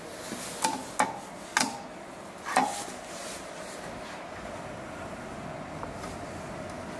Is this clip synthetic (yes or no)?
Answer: no